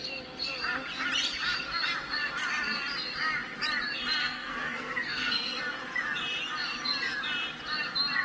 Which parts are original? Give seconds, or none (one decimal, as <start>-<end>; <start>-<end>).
0.0-4.2; 5.6-8.2